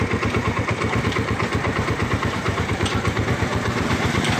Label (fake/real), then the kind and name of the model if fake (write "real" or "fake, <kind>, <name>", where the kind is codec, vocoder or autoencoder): fake, vocoder, BigVGAN v2